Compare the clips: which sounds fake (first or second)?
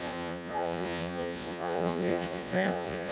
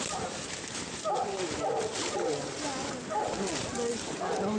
first